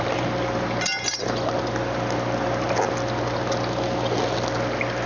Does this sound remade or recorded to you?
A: recorded